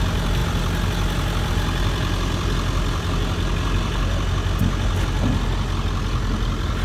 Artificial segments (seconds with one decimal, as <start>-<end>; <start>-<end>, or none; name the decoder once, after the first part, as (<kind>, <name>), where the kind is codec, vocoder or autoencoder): none